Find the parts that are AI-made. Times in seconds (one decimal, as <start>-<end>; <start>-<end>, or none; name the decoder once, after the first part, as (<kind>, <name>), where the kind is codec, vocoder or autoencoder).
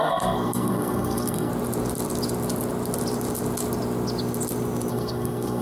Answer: 0.0-1.5 (codec, SNAC); 4.9-5.6